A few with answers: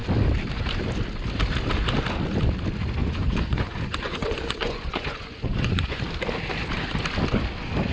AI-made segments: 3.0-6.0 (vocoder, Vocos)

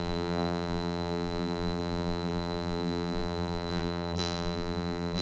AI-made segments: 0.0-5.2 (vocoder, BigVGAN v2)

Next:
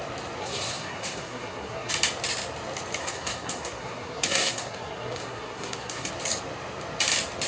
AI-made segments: 0.4-1.9 (codec, SNAC); 3.0-6.1